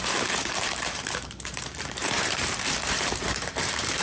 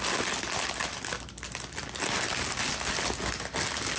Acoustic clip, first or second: second